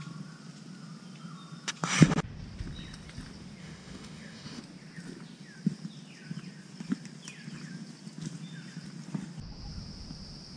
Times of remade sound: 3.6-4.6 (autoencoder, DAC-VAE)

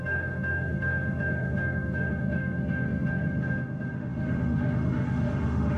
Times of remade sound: 0.0-5.8 (autoencoder, DAC-VAE)